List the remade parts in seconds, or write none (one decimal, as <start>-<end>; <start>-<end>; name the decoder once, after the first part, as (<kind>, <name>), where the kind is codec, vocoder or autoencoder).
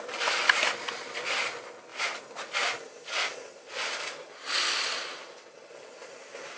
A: none